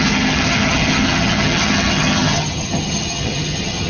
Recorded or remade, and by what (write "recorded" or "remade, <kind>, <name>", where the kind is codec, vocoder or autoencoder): remade, vocoder, HiFi-GAN